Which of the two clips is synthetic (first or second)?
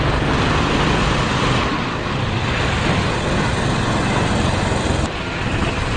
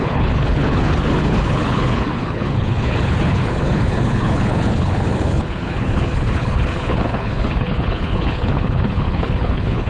second